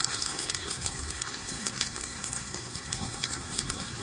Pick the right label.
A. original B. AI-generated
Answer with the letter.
B